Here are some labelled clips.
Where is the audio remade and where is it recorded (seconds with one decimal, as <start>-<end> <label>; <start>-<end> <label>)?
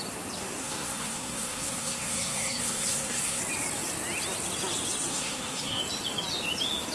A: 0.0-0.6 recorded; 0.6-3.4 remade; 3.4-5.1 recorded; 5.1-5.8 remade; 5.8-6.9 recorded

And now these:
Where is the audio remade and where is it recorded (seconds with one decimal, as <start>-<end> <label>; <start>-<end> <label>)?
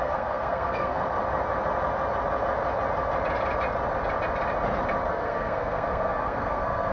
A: 0.0-1.0 remade; 1.0-5.1 recorded; 5.1-6.9 remade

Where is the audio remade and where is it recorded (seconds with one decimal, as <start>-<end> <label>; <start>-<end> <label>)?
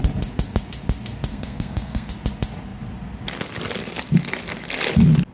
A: 0.0-1.3 recorded; 1.3-2.1 remade; 2.1-5.3 recorded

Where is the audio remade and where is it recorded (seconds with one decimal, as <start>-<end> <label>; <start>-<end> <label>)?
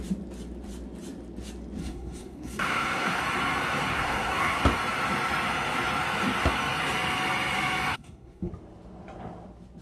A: 0.0-1.8 recorded; 1.8-3.2 remade; 3.2-3.9 recorded; 3.9-4.6 remade; 4.6-7.9 recorded; 7.9-8.5 remade; 8.5-9.8 recorded